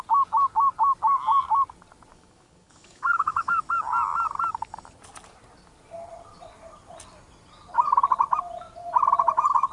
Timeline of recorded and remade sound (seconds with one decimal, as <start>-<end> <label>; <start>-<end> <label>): 0.0-2.1 recorded; 2.1-3.6 remade; 3.6-9.7 recorded